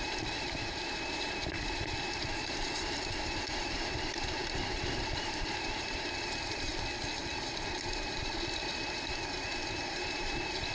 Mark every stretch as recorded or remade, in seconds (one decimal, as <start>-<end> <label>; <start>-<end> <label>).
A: 0.0-6.7 remade; 6.7-7.2 recorded; 7.2-10.7 remade